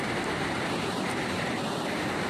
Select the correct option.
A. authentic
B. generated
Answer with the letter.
A